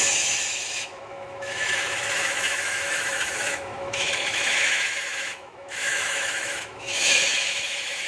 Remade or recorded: remade